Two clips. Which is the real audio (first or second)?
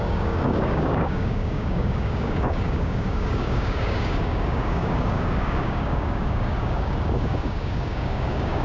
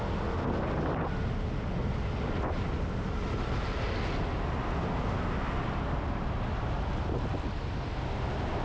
second